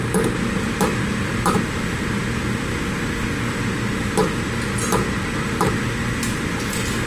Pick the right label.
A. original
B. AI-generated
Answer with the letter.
A